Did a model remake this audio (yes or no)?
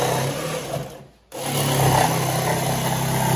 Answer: no